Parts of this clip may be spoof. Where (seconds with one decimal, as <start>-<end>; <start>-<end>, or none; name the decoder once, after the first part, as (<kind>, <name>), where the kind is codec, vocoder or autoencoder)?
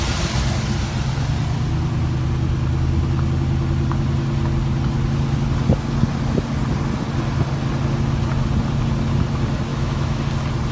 9.7-10.2 (autoencoder, DAC-VAE)